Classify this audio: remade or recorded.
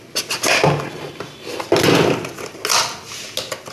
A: recorded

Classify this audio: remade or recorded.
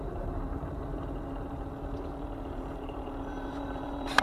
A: remade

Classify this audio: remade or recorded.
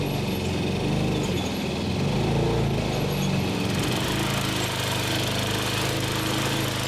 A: recorded